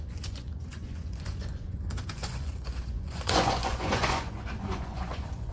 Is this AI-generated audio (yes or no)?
yes